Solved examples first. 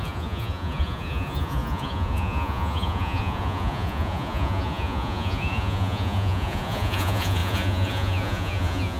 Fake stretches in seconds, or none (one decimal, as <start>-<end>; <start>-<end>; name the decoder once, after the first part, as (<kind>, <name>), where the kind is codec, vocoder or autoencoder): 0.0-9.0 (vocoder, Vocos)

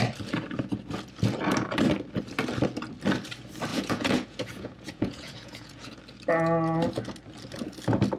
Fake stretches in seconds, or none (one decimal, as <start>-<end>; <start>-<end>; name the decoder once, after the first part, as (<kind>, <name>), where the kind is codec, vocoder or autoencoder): 3.7-6.0 (vocoder, Vocos)

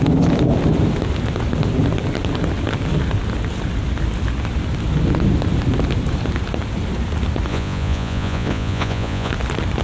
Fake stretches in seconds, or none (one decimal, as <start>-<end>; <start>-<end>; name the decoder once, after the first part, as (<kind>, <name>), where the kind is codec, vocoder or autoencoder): 7.5-9.3 (vocoder, Vocos)